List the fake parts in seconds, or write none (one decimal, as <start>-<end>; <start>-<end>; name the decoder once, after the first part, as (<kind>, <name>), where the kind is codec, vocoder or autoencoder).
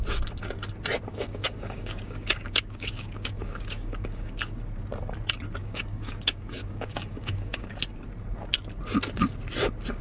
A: 1.1-4.6 (codec, DAC); 5.6-7.7